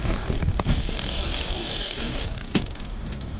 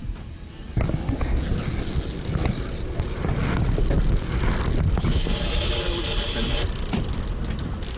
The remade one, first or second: first